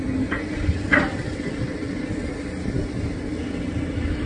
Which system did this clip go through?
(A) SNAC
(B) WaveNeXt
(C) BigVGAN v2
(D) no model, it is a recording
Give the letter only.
D